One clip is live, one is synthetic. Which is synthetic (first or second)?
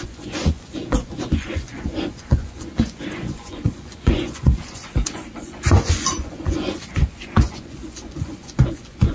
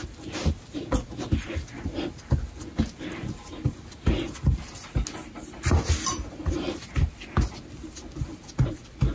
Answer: first